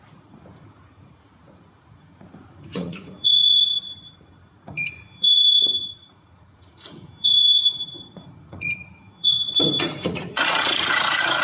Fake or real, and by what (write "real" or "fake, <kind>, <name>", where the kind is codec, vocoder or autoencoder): fake, vocoder, Vocos